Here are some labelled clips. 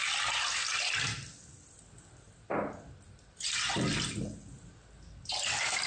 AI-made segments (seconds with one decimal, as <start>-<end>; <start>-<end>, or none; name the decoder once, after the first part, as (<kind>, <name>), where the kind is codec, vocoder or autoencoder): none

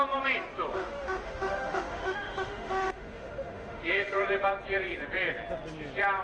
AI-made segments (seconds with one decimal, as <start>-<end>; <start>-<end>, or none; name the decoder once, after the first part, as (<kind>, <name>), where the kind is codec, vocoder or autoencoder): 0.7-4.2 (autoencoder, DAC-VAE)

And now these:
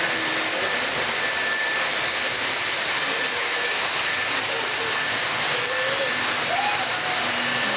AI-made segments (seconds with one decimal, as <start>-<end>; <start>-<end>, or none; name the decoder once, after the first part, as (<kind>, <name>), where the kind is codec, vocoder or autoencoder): 3.4-4.0 (autoencoder, DAC-VAE)

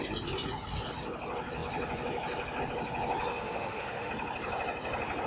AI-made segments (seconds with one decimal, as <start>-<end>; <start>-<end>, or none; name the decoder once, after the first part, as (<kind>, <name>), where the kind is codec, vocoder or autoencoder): 3.3-4.1 (autoencoder, DAC-VAE)

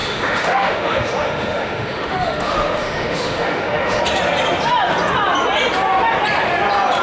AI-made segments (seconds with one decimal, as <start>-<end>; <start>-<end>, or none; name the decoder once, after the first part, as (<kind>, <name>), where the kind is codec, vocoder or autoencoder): 0.0-4.0 (autoencoder, DAC-VAE)

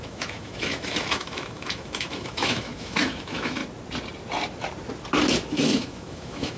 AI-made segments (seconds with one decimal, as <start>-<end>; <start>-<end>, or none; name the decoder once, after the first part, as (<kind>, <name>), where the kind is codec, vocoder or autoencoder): 0.0-3.6 (autoencoder, DAC-VAE); 5.5-6.6